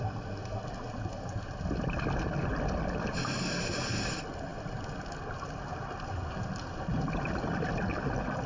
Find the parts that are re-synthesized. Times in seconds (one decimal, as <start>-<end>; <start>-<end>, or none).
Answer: none